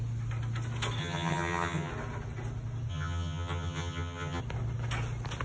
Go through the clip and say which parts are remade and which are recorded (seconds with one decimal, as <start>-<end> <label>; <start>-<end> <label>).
0.0-1.0 recorded; 1.0-1.9 remade; 1.9-2.9 recorded; 2.9-4.4 remade; 4.4-5.4 recorded